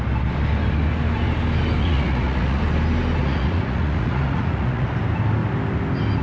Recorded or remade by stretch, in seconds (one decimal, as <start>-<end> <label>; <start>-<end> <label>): 0.0-1.8 recorded; 1.8-2.6 remade; 2.6-3.2 recorded; 3.2-4.9 remade; 4.9-6.2 recorded